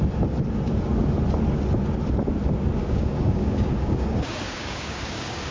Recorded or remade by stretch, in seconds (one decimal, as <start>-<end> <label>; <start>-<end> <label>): 0.0-2.8 recorded; 2.8-5.5 remade